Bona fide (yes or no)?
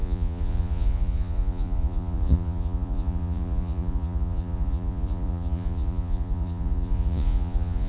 no